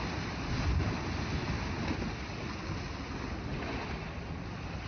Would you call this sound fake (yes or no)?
no